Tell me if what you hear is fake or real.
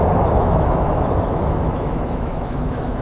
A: fake